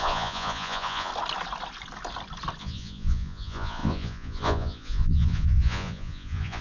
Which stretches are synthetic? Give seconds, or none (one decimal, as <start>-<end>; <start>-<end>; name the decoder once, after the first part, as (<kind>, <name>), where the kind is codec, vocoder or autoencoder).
0.0-1.1 (vocoder, Vocos); 2.6-6.6